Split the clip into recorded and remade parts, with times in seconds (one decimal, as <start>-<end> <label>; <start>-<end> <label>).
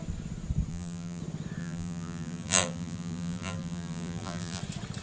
0.0-0.7 recorded; 0.7-1.2 remade; 1.2-1.6 recorded; 1.6-4.6 remade; 4.6-5.0 recorded